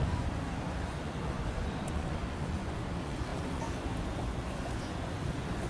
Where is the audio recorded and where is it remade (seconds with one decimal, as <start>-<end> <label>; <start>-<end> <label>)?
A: 0.0-5.7 remade